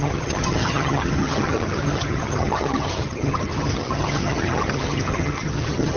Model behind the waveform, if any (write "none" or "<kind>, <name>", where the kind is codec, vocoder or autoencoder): vocoder, HiFi-GAN